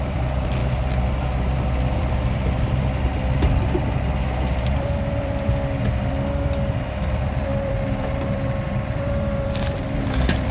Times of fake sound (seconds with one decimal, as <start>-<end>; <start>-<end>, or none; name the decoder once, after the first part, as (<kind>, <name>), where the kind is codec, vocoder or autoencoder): 0.0-0.6 (vocoder, BigVGAN v2); 2.0-3.1; 4.8-10.5